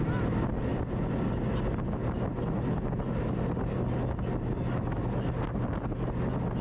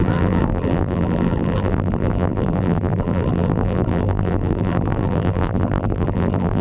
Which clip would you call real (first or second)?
first